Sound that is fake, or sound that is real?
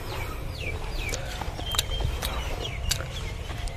fake